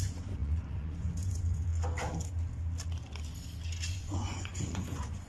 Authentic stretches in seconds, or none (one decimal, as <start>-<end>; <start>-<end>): 1.7-3.9